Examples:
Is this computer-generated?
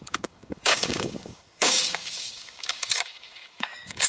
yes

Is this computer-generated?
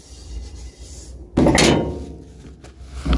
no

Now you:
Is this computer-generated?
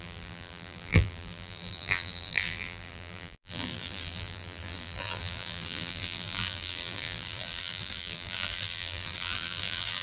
yes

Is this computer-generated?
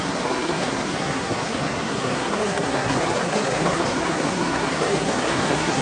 yes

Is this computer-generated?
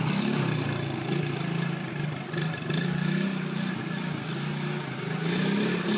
no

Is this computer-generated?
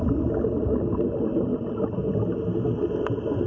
no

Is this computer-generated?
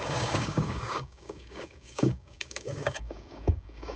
yes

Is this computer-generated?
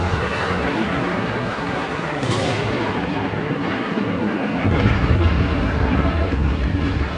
yes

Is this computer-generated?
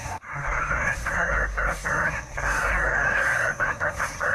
yes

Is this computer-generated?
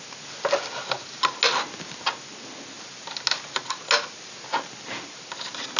no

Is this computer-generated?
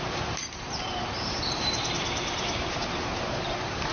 yes